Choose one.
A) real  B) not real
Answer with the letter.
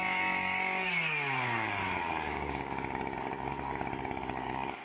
B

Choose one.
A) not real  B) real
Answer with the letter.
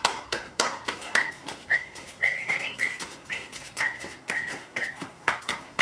A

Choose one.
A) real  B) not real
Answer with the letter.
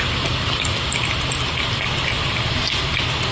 A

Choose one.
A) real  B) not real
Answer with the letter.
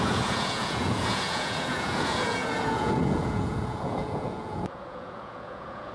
B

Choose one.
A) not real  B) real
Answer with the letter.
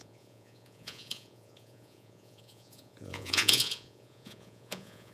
A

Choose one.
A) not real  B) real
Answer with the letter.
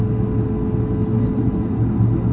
B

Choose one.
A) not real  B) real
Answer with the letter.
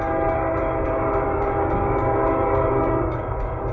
A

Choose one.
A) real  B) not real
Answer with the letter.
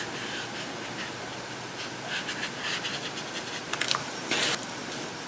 A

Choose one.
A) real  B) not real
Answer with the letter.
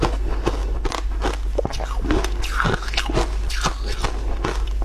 A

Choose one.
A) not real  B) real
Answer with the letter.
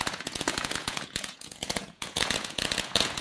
A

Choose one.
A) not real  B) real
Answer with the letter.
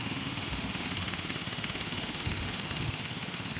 A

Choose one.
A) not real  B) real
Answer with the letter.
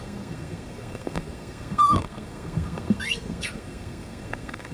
A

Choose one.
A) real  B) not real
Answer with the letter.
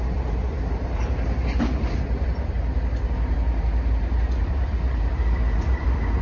B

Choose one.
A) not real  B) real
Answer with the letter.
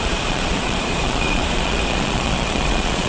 A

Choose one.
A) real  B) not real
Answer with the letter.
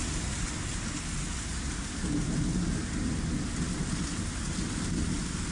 A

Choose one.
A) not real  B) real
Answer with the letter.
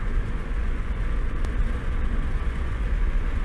A